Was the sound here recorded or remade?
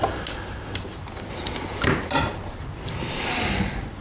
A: recorded